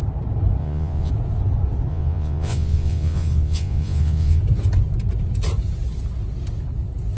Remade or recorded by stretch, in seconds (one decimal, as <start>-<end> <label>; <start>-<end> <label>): 0.0-0.6 recorded; 0.6-1.1 remade; 1.1-1.9 recorded; 1.9-4.4 remade; 4.4-7.2 recorded